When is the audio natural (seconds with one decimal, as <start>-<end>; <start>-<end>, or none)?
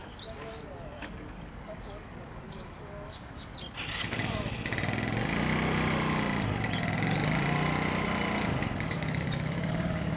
0.0-0.7; 3.5-8.6